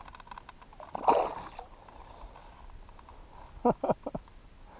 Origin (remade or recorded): recorded